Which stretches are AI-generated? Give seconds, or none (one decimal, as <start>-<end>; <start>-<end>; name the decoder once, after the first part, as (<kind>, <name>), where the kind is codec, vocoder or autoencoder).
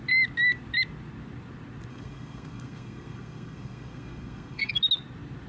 1.9-4.7 (codec, SNAC)